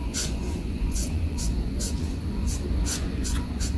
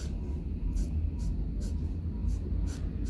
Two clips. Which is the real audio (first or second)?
second